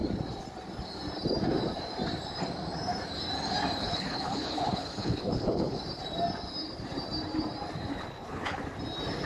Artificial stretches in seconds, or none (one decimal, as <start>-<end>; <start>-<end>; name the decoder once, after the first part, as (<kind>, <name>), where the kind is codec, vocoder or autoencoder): 3.8-5.8 (codec, HILCodec); 7.9-8.6